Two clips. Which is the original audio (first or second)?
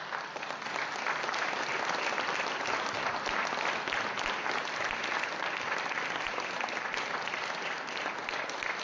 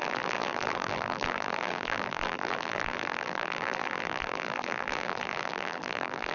first